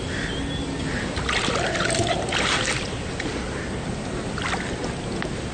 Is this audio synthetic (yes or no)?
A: no